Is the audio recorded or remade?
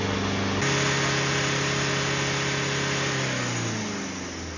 recorded